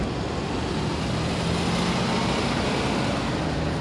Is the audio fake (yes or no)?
no